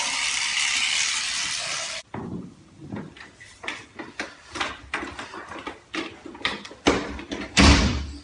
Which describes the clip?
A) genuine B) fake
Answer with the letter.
B